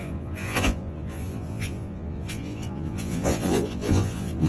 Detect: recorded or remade remade